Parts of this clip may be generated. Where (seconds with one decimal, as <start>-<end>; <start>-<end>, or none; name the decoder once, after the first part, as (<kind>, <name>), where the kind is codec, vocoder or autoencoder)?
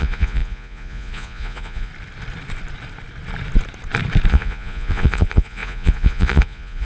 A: 0.0-1.9 (vocoder, Vocos); 4.3-6.8